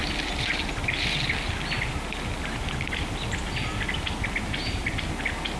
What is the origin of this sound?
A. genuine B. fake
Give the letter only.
A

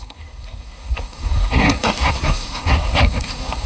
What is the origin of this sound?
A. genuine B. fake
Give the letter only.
B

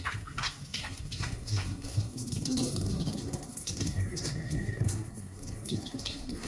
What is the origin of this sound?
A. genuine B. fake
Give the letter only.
B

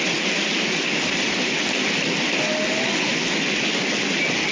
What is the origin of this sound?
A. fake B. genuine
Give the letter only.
B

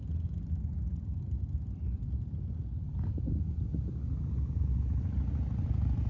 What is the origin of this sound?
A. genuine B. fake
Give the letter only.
A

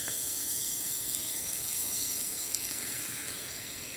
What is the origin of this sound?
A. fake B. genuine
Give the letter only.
A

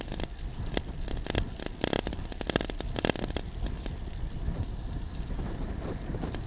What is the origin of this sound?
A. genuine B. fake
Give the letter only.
A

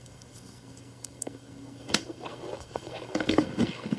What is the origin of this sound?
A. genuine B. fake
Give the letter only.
B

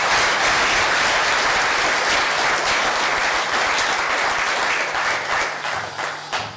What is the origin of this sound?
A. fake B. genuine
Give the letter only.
B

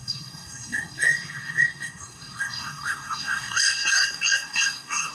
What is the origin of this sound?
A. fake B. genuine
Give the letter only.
A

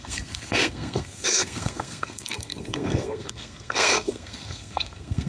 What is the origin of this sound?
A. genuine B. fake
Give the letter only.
B